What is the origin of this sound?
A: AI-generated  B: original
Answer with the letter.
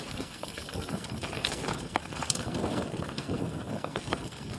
A